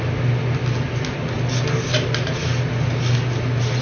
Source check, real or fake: real